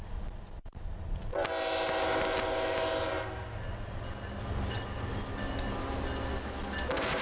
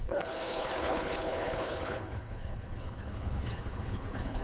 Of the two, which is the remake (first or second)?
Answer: second